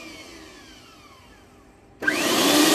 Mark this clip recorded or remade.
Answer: recorded